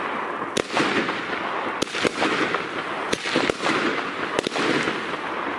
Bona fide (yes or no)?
yes